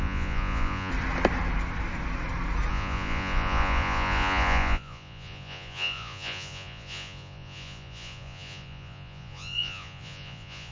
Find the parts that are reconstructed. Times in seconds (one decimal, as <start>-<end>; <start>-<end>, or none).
0.0-0.9; 2.7-10.7